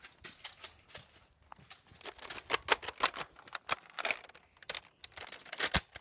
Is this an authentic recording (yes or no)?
yes